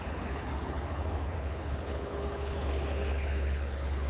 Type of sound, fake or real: fake